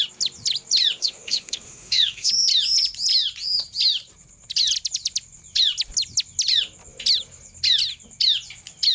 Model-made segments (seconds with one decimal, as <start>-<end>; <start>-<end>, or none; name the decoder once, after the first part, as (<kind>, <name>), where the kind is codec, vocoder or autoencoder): 1.0-2.3 (autoencoder, DAC-VAE)